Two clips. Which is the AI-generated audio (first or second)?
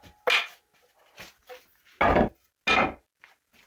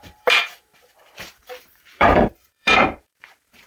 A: second